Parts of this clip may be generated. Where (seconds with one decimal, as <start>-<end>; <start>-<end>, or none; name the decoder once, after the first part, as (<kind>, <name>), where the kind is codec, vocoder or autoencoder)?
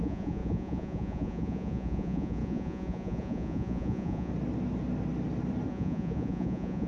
0.0-4.3 (vocoder, Vocos); 5.7-6.9